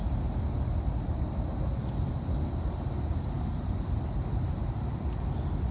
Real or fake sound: real